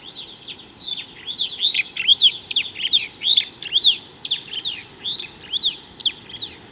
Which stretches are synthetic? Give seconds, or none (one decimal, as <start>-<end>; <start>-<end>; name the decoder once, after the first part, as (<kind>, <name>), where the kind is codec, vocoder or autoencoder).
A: 2.1-4.0 (vocoder, BigVGAN v2)